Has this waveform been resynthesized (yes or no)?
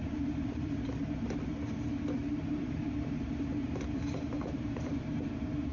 yes